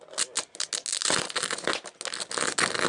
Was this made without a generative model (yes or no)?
yes